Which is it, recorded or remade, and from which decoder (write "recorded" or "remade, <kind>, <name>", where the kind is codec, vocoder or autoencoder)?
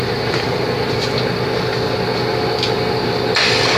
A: recorded